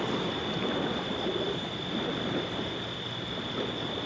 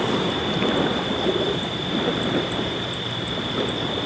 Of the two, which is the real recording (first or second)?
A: first